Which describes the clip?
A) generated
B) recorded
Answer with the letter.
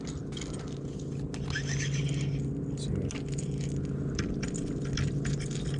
B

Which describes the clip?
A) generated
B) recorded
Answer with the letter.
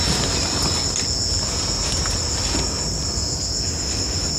B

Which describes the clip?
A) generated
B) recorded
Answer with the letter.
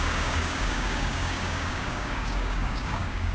A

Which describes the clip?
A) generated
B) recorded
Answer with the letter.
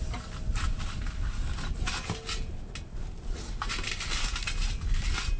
B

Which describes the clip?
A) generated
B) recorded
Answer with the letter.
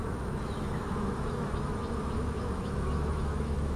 A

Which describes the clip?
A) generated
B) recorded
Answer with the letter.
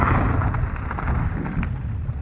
A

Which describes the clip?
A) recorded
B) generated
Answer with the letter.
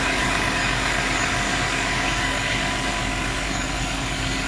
B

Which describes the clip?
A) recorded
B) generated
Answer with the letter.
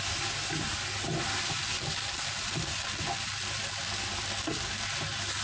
A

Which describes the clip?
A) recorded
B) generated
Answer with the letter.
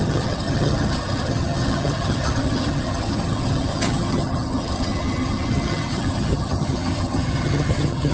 B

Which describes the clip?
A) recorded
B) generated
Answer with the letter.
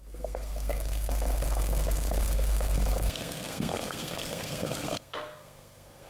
B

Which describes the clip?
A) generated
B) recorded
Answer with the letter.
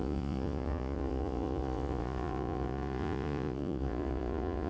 A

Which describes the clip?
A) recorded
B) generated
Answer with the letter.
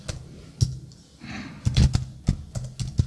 A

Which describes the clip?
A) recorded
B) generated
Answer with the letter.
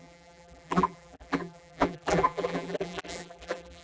B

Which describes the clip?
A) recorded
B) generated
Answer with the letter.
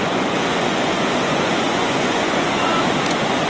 B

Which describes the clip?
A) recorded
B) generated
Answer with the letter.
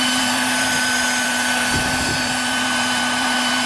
B